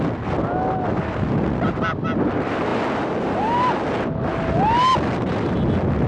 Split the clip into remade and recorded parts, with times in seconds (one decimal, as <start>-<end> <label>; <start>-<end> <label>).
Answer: 0.0-6.1 recorded